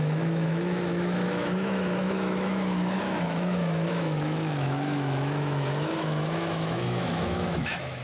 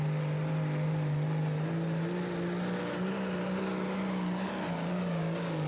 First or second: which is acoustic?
second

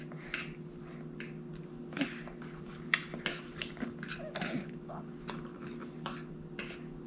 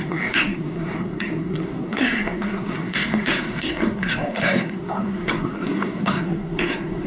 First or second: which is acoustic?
first